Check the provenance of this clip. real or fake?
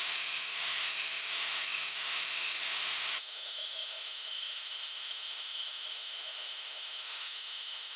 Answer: fake